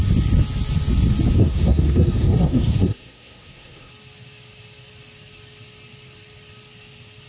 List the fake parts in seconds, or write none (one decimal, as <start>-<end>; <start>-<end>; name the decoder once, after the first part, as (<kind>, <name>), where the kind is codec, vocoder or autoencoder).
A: 1.4-3.9 (codec, SNAC)